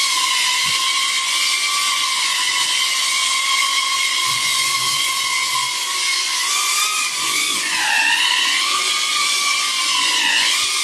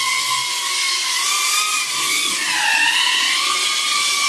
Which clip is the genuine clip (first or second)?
second